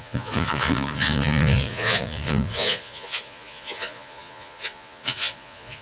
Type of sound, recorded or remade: remade